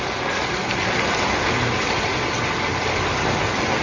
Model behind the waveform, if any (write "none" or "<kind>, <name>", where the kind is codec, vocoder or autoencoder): none